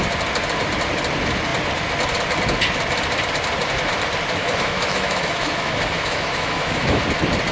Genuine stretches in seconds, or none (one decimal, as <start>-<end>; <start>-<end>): 0.0-4.4; 7.0-7.5